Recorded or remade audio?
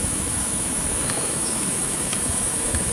remade